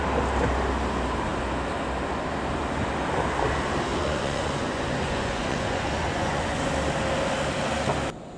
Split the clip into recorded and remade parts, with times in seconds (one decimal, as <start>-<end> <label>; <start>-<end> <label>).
0.0-3.9 recorded; 3.9-6.7 remade; 6.7-8.4 recorded